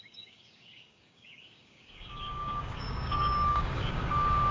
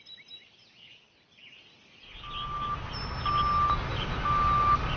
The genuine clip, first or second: second